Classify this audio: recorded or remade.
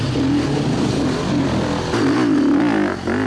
recorded